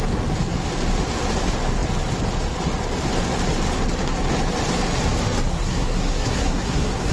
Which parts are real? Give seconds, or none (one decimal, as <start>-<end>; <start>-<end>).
0.0-5.5